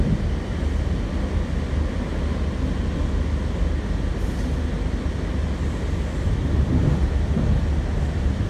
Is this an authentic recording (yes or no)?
yes